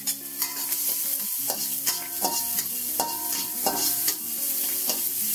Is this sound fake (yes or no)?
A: no